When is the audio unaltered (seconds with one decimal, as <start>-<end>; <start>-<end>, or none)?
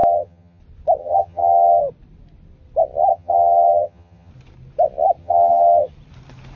0.6-1.0; 1.8-3.1; 4.3-5.2; 5.9-6.6